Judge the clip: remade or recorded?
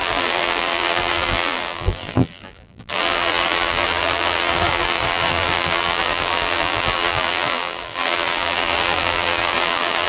remade